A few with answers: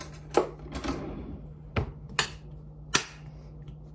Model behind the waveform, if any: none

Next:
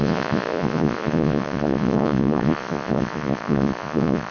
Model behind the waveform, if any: vocoder, Vocos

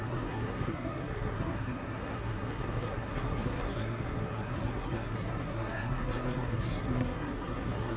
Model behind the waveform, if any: codec, SNAC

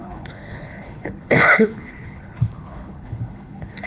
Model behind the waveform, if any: codec, HILCodec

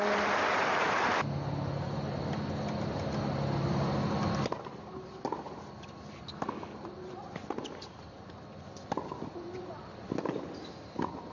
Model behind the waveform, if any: none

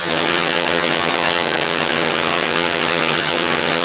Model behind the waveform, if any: vocoder, HiFi-GAN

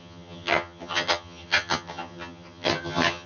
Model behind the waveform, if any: vocoder, HiFi-GAN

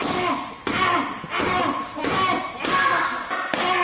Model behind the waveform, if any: none